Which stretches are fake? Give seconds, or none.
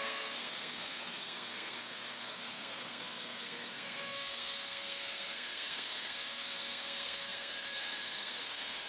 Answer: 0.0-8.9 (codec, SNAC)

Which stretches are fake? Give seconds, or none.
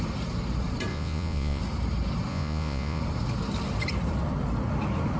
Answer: 0.9-1.6 (vocoder, Vocos); 2.3-3.0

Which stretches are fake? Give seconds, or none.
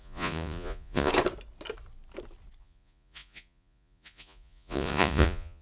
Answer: 0.0-1.1 (vocoder, Vocos); 2.6-5.6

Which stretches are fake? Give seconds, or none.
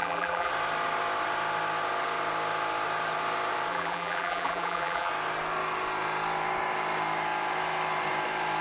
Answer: 0.0-0.5 (vocoder, BigVGAN v2); 3.7-5.1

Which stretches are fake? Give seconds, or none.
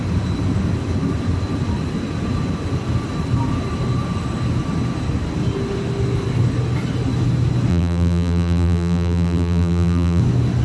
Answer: 7.7-10.2 (vocoder, BigVGAN v2)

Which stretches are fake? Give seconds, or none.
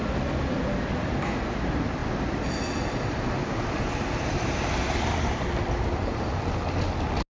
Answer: none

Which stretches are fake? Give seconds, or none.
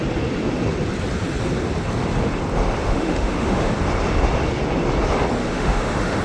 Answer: 2.8-3.7 (autoencoder, DAC-VAE); 5.4-6.2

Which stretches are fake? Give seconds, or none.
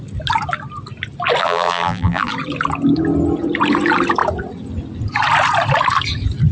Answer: 1.4-2.3 (vocoder, BigVGAN v2)